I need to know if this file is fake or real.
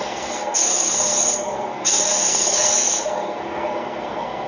fake